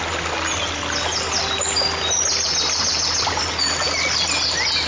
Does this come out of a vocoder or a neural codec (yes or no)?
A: no